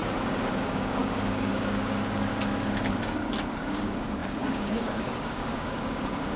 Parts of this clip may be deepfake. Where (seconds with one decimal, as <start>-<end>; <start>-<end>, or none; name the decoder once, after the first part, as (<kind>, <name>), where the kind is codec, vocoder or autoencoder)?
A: 0.6-2.3 (codec, DAC); 3.5-6.4